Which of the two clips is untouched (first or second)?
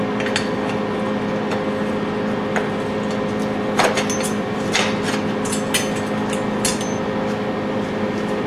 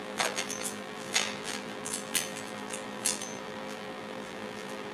first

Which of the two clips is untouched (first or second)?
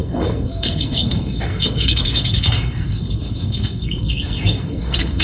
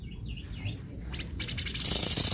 second